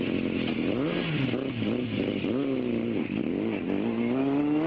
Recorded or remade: recorded